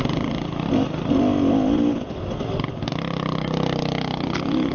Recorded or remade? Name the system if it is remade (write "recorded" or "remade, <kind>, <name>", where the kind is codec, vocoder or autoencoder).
recorded